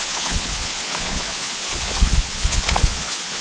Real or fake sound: fake